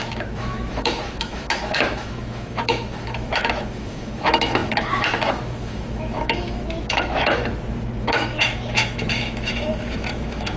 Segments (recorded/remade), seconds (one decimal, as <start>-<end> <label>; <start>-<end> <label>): 0.0-7.4 remade; 7.4-8.0 recorded; 8.0-10.6 remade